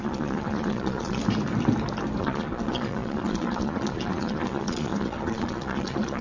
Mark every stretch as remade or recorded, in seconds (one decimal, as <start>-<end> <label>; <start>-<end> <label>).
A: 0.0-1.2 remade; 1.2-2.2 recorded; 2.2-6.2 remade